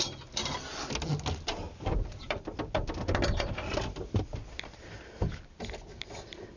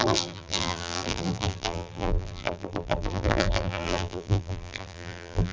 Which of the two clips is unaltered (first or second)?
first